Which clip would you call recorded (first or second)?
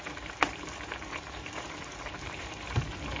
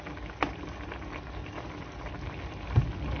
second